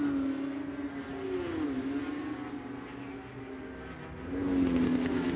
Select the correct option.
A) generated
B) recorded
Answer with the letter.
B